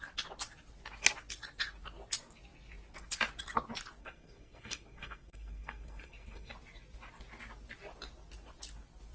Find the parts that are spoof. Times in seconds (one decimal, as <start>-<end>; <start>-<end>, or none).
4.0-6.5